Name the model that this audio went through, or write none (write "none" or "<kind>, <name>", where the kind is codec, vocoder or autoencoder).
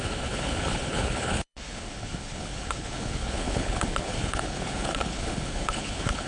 codec, HILCodec